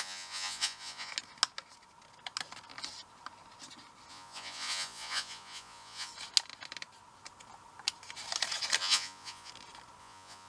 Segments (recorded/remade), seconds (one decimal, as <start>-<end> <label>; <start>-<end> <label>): 0.0-1.1 remade; 1.1-4.1 recorded; 4.1-6.1 remade; 6.1-8.8 recorded; 8.8-9.5 remade; 9.5-10.0 recorded; 10.0-10.5 remade